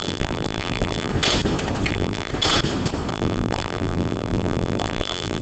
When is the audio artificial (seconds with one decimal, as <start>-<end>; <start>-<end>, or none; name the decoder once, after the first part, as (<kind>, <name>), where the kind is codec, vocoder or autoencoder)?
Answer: 0.0-1.1 (vocoder, BigVGAN v2); 1.9-2.3; 3.1-5.4